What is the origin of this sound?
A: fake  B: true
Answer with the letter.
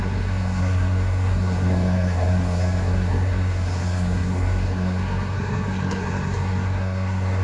A